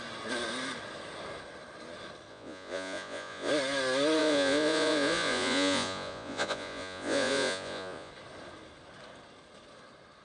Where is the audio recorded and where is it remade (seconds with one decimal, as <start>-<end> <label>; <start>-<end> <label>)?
0.0-2.3 recorded; 2.3-3.5 remade; 3.5-4.2 recorded; 4.2-8.1 remade; 8.1-10.2 recorded